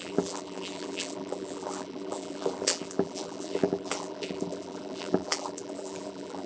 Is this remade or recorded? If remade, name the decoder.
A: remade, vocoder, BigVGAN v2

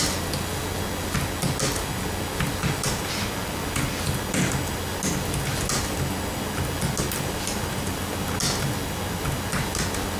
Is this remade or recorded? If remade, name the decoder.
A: recorded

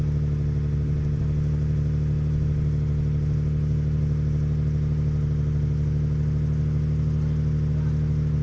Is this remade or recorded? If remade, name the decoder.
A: recorded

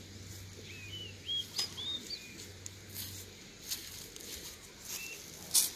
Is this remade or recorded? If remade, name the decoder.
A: recorded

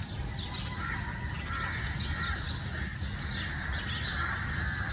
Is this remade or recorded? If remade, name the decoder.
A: recorded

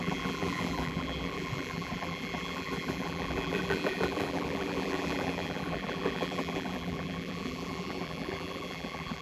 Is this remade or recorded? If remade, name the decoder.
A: remade, vocoder, BigVGAN v2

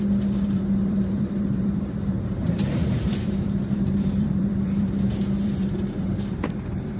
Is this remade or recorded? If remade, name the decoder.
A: remade, vocoder, BigVGAN v2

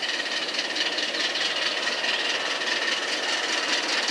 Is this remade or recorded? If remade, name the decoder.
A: remade, vocoder, BigVGAN v2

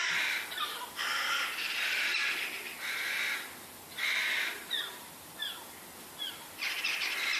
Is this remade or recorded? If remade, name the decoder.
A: remade, vocoder, BigVGAN v2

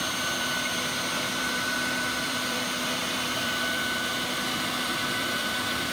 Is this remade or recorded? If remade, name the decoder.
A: remade, vocoder, BigVGAN v2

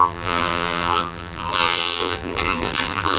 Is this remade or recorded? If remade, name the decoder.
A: remade, vocoder, BigVGAN v2